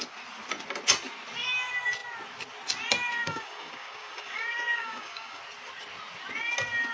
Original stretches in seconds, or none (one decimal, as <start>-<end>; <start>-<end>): 0.0-3.1; 5.4-6.9